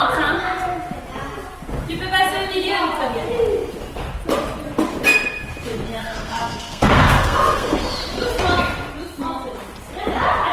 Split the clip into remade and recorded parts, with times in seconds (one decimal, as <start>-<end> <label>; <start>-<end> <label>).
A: 0.0-6.0 recorded; 6.0-8.3 remade; 8.3-10.5 recorded